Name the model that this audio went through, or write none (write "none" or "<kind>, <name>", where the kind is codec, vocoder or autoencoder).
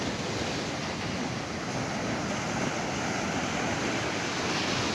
none